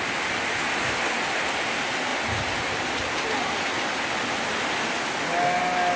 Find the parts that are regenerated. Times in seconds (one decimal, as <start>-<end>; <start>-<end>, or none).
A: none